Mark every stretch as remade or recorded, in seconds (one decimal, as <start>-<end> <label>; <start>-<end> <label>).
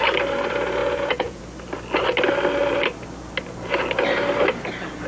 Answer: 0.0-0.8 recorded; 0.8-1.4 remade; 1.4-5.1 recorded